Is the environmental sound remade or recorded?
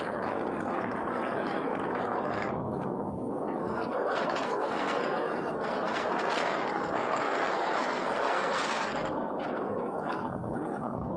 remade